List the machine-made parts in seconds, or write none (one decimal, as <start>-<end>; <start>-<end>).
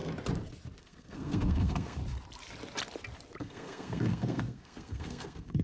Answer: 0.8-2.0; 3.4-5.6